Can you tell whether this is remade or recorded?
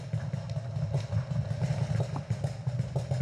recorded